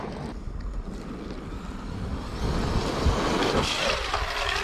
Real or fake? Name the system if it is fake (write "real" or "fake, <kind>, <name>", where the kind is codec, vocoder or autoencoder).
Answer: real